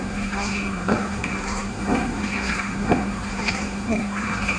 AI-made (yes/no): yes